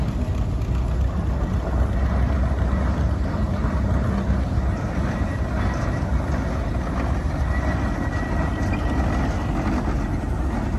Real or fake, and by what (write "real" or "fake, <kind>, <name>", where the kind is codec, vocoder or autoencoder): real